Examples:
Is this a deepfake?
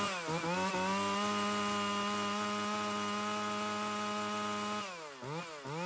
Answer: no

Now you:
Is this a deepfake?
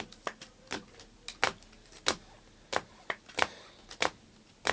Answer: no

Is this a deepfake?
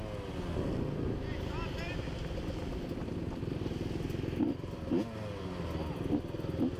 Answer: no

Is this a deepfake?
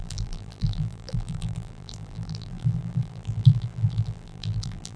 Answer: yes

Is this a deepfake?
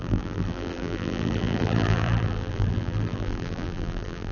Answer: yes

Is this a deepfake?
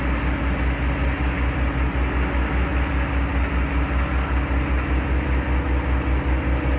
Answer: no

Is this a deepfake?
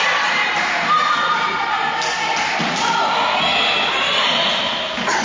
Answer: no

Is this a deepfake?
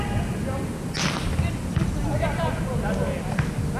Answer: no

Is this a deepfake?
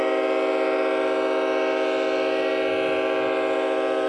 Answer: no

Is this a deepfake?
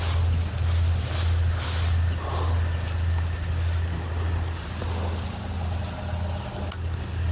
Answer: no